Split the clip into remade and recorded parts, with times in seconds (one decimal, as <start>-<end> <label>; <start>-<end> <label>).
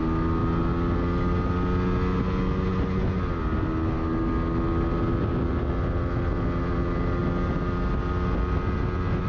0.0-9.3 recorded